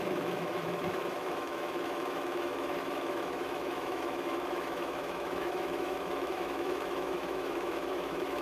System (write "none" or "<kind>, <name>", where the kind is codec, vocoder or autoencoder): autoencoder, DAC-VAE